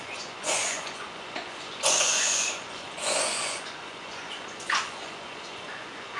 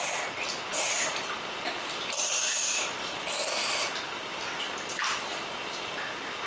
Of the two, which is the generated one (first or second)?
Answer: first